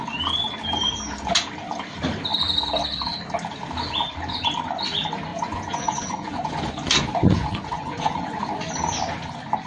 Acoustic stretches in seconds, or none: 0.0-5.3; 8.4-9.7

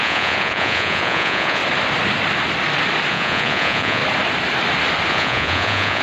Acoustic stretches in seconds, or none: 1.6-3.1; 4.0-5.1

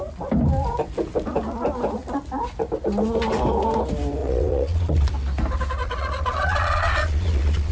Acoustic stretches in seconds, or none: 0.0-4.2; 5.1-5.8

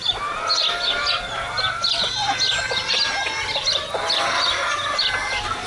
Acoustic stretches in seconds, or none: 0.0-5.7

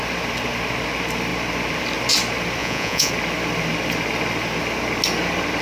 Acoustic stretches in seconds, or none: 0.0-2.6; 3.1-5.6

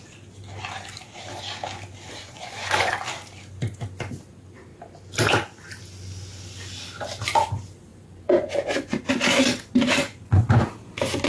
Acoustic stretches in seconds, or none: 0.0-2.2; 2.9-7.9; 9.0-10.0; 10.7-11.3

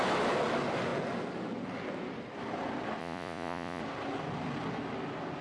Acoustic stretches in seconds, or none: 0.0-3.0; 3.8-5.4